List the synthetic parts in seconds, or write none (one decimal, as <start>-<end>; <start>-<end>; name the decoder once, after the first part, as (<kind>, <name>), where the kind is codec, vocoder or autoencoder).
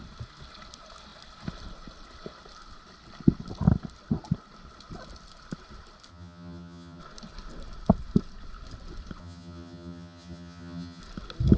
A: 6.1-7.0 (vocoder, HiFi-GAN); 9.2-11.0